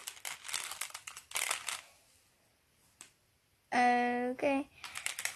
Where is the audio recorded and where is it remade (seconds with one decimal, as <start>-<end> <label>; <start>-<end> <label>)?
0.0-5.4 recorded